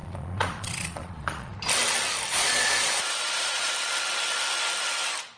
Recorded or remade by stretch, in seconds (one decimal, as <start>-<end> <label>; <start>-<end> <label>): 0.0-1.5 remade; 1.5-2.3 recorded; 2.3-3.7 remade; 3.7-5.4 recorded